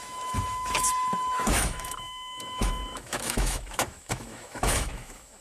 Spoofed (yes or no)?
yes